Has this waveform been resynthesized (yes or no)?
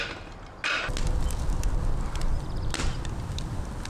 no